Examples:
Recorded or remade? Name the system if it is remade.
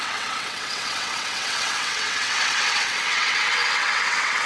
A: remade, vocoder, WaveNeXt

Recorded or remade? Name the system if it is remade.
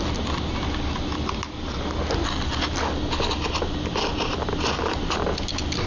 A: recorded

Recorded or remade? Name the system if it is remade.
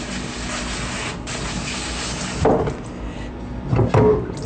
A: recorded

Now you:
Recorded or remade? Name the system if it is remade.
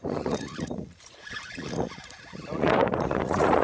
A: remade, vocoder, Vocos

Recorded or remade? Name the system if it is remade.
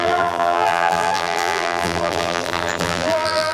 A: remade, vocoder, BigVGAN v2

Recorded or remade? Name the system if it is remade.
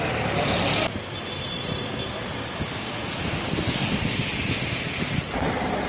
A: recorded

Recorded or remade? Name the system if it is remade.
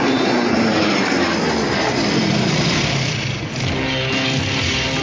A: recorded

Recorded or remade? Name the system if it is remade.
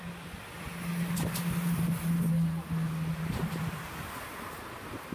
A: recorded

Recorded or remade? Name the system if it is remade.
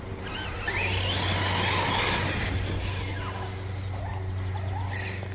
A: recorded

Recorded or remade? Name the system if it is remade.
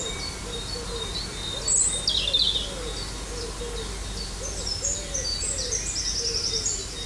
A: recorded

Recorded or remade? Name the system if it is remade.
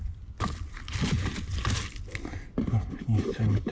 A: recorded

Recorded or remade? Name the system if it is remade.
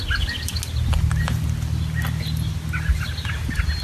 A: recorded